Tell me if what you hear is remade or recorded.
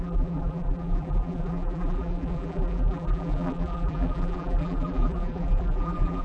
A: remade